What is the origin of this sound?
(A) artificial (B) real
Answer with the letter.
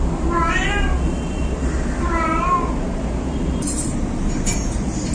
B